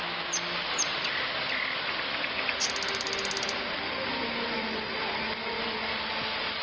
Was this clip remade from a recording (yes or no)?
no